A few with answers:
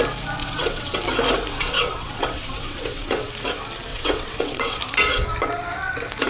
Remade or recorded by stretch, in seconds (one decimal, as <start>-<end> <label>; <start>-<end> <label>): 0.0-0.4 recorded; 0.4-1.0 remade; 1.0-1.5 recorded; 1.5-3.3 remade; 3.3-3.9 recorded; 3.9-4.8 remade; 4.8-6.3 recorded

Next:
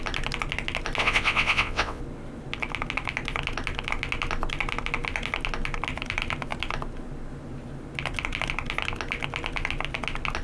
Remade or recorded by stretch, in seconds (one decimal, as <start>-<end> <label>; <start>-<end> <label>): 0.0-1.0 recorded; 1.0-2.0 remade; 2.0-10.4 recorded

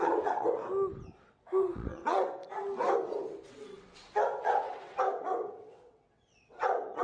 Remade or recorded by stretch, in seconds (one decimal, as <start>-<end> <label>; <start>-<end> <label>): 0.0-0.6 remade; 0.6-1.2 recorded; 1.2-2.4 remade; 2.4-3.5 recorded; 3.5-7.0 remade

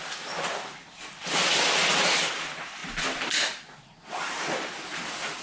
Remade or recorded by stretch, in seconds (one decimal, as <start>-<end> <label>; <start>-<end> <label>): 0.0-5.4 recorded

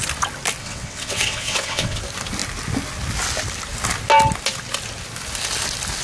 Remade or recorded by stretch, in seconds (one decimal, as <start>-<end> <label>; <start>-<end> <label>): 0.0-0.6 recorded; 0.6-2.0 remade; 2.0-6.0 recorded

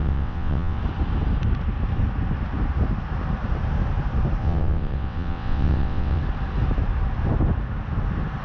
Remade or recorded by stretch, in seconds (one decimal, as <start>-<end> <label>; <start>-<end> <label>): 0.0-0.8 remade; 0.8-4.4 recorded; 4.4-6.2 remade; 6.2-8.4 recorded

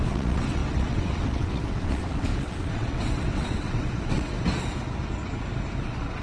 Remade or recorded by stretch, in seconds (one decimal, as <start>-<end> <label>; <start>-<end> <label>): 0.0-4.3 remade; 4.3-5.8 recorded; 5.8-6.2 remade